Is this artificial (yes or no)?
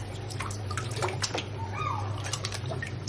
yes